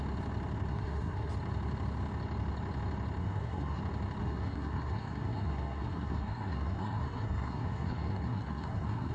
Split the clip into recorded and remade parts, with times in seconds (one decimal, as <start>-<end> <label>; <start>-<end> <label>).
0.0-0.7 recorded; 0.7-1.3 remade; 1.3-3.2 recorded; 3.2-3.8 remade; 3.8-4.2 recorded; 4.2-9.1 remade